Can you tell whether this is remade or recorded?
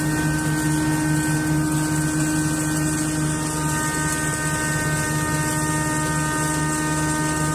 recorded